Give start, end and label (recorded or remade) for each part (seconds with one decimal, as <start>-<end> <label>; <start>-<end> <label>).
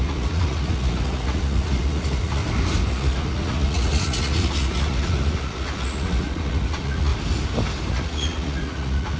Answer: 0.0-2.4 remade; 2.4-2.9 recorded; 2.9-7.1 remade; 7.1-7.9 recorded; 7.9-9.2 remade